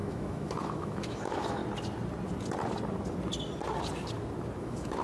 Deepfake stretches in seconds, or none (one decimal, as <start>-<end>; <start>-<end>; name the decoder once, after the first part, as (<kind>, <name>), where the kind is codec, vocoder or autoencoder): 0.0-1.6 (autoencoder, DAC-VAE); 4.6-5.0